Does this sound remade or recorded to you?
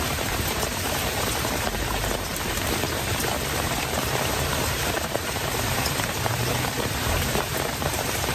remade